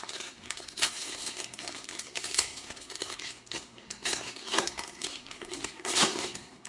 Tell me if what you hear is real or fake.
fake